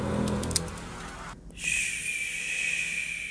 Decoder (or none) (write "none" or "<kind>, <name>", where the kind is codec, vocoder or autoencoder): none